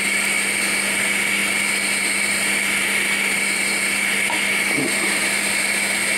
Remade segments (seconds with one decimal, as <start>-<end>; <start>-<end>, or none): none